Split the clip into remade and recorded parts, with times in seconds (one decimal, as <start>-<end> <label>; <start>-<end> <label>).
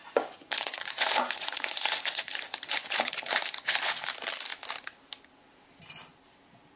0.0-4.1 remade; 4.1-6.8 recorded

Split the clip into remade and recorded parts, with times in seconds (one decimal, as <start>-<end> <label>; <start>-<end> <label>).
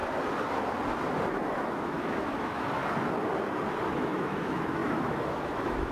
0.0-1.3 recorded; 1.3-2.8 remade; 2.8-3.9 recorded; 3.9-5.9 remade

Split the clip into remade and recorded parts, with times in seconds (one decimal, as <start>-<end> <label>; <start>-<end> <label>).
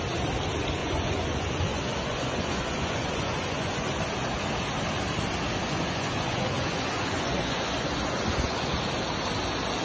0.0-0.8 recorded; 0.8-4.0 remade; 4.0-5.6 recorded; 5.6-8.8 remade; 8.8-9.8 recorded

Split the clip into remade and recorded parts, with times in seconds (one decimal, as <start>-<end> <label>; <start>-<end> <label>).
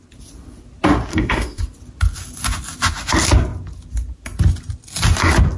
0.0-1.1 recorded; 1.1-1.6 remade; 1.6-5.6 recorded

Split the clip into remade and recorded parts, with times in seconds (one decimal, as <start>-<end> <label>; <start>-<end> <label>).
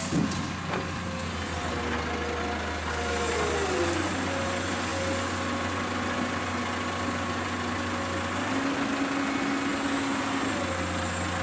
0.0-11.4 recorded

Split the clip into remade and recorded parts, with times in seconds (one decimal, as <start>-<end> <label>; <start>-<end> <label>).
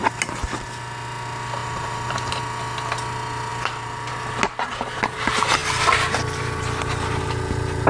0.0-1.6 recorded; 1.6-2.4 remade; 2.4-3.5 recorded; 3.5-4.1 remade; 4.1-7.9 recorded